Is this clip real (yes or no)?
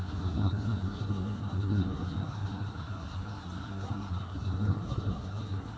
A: no